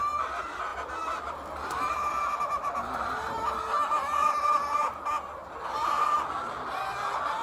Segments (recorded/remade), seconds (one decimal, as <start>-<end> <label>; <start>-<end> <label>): 0.0-7.4 recorded